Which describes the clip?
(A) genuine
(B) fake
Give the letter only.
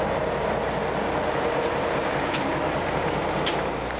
A